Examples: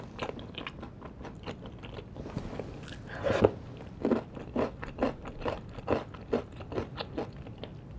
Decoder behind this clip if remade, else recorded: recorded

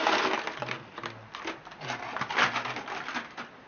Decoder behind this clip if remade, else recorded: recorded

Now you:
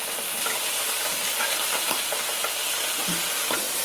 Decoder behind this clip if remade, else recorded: recorded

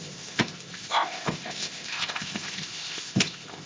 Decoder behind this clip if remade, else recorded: remade, codec, ZipCodec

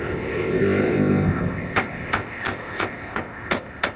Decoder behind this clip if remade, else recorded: remade, codec, ZipCodec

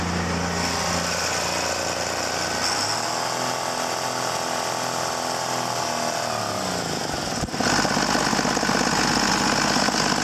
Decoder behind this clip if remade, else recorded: recorded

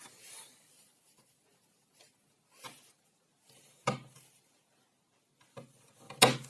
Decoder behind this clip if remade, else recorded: recorded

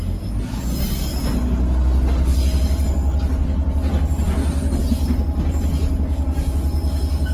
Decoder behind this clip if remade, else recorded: recorded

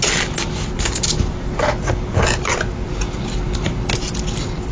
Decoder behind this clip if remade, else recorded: recorded